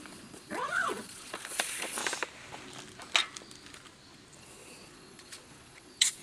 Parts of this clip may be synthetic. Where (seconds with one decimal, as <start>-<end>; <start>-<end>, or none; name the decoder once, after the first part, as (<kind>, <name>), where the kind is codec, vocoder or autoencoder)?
0.0-2.0 (vocoder, Vocos); 4.4-6.2